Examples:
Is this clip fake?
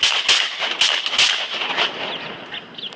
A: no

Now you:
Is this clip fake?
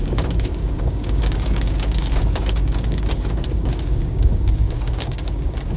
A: yes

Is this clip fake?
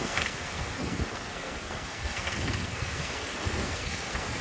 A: yes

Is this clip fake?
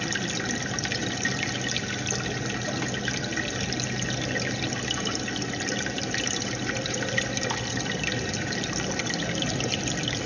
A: no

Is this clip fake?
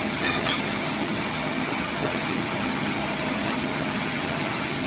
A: yes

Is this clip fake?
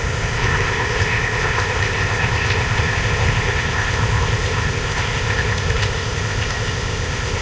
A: yes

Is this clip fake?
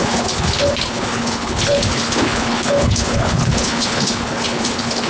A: yes